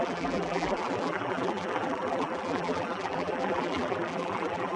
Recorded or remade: remade